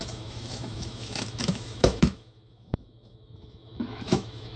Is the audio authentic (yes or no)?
no